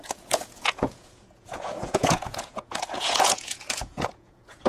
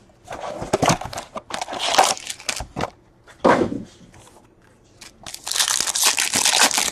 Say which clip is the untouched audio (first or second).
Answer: second